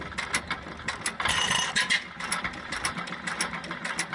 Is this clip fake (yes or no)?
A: no